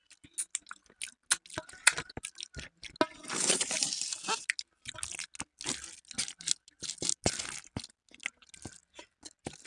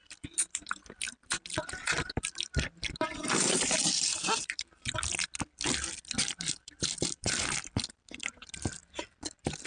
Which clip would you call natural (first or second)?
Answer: first